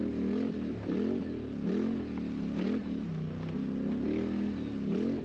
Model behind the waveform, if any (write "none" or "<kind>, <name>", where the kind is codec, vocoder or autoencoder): none